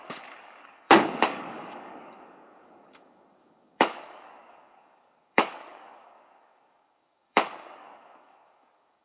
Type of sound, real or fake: fake